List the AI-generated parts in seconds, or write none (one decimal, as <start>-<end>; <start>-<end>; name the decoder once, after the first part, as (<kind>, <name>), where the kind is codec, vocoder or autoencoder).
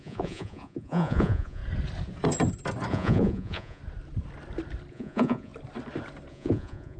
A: 0.0-1.6 (vocoder, Vocos); 2.9-3.8; 4.9-5.5; 6.3-7.0